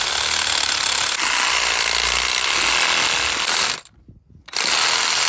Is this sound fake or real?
real